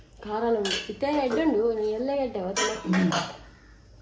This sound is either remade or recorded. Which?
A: recorded